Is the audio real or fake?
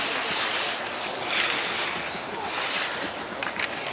real